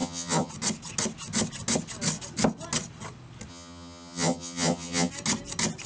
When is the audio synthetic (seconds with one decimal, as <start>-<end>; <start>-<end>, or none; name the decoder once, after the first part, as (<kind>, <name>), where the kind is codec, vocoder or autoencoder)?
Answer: 0.0-0.5 (vocoder, HiFi-GAN); 3.5-5.1